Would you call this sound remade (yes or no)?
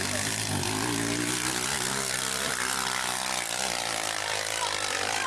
no